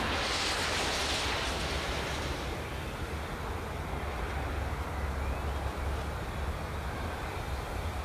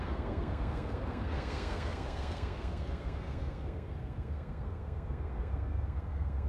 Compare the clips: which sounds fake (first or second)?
second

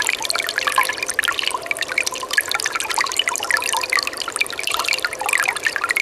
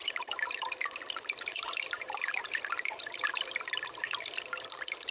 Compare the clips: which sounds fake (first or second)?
second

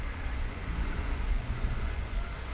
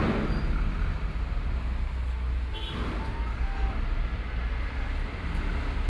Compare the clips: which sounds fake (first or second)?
first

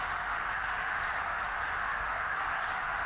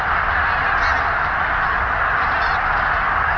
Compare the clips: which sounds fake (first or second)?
first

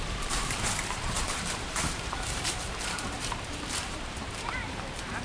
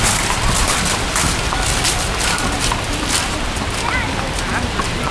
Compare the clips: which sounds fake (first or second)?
first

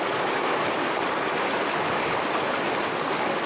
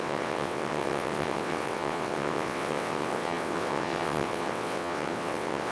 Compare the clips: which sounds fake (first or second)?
second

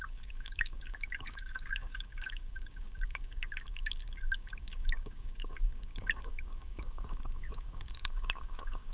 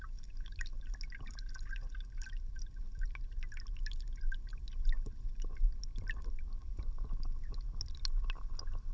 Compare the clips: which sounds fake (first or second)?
first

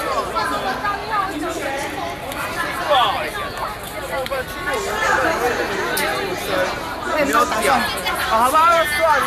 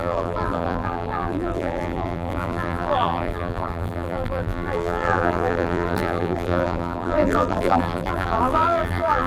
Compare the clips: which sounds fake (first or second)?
second